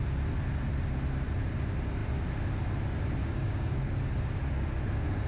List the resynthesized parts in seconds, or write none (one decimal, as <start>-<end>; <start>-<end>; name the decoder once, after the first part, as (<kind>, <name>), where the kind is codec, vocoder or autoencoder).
3.2-3.9 (codec, DAC)